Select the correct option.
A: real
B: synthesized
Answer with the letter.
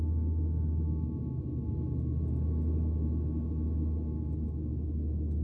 A